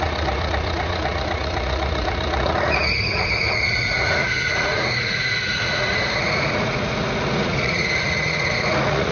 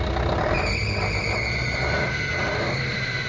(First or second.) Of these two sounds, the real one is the second